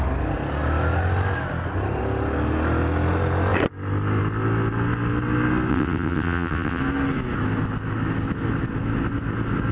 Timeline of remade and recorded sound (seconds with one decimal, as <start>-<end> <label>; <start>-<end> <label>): 0.0-5.7 recorded; 5.7-6.8 remade; 6.8-9.7 recorded